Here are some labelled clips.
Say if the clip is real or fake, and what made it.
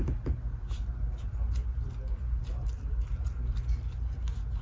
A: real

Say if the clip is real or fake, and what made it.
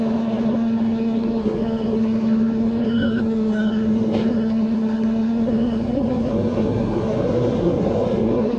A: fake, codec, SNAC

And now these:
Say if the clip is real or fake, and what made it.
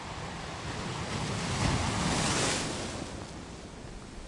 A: real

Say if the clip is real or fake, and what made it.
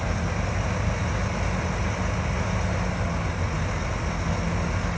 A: real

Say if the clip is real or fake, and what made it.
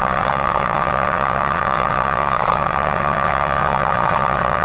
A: fake, vocoder, WaveNeXt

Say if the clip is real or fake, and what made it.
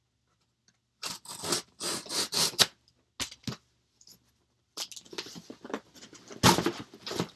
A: real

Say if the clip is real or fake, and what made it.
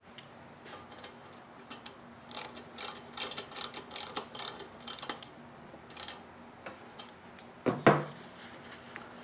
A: real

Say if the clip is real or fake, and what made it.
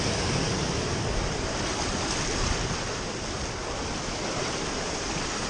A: real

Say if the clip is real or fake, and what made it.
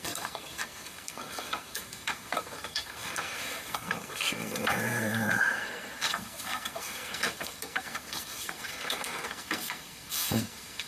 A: fake, codec, SNAC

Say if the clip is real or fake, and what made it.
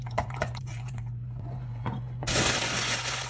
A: fake, vocoder, Vocos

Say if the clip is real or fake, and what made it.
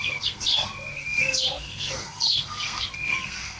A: fake, codec, SNAC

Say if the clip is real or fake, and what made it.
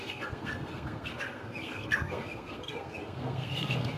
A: fake, codec, SNAC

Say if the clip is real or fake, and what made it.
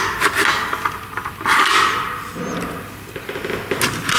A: real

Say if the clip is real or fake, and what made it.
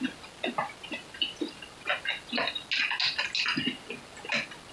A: real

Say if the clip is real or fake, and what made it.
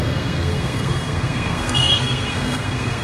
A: fake, codec, SNAC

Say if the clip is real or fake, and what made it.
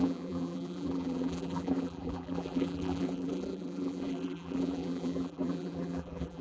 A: fake, vocoder, BigVGAN v2